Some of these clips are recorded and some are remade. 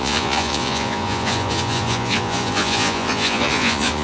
remade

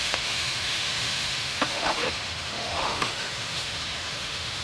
remade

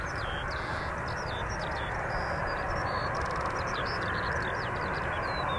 recorded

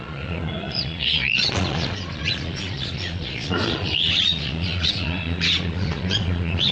remade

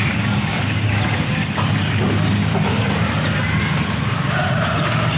remade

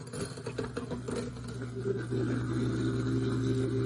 recorded